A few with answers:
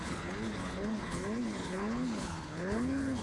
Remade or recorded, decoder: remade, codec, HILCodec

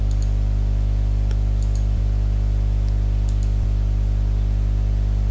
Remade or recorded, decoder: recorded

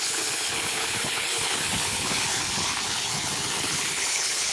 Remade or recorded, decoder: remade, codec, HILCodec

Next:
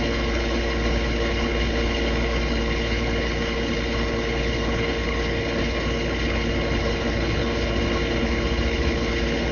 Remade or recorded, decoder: remade, codec, HILCodec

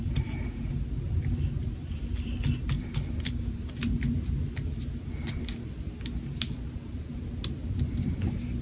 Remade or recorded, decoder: recorded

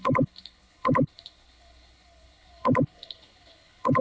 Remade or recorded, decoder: remade, codec, HILCodec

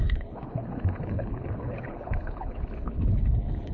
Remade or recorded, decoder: remade, codec, HILCodec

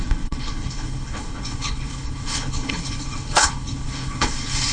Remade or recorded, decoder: remade, codec, HILCodec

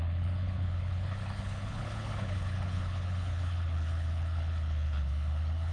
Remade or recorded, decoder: remade, codec, HILCodec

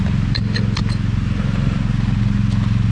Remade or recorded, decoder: recorded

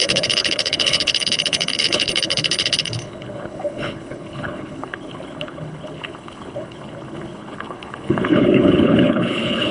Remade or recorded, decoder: remade, codec, HILCodec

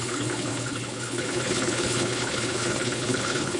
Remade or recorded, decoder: remade, codec, HILCodec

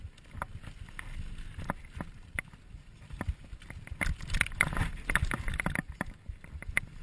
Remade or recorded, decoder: recorded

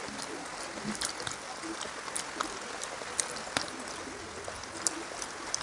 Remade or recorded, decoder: recorded